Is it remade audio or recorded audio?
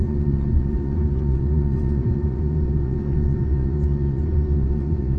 remade